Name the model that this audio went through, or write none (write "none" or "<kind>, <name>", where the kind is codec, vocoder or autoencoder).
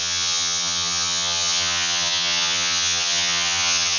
vocoder, HiFi-GAN